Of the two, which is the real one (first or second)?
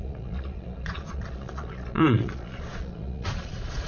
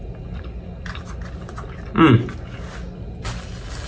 second